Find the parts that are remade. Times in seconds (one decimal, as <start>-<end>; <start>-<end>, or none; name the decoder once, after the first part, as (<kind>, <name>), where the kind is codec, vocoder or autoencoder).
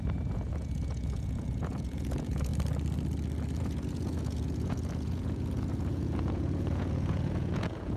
0.0-2.5 (vocoder, Vocos); 3.6-8.0